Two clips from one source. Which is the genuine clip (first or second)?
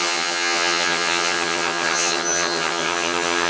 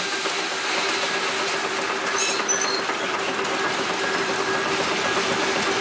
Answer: second